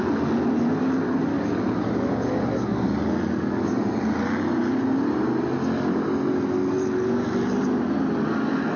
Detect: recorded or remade recorded